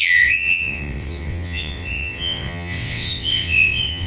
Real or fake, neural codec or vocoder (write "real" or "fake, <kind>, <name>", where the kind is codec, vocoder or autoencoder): fake, vocoder, WaveNeXt